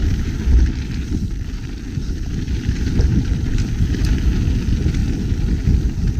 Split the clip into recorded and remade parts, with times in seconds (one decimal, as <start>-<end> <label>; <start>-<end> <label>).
0.0-3.7 remade; 3.7-6.2 recorded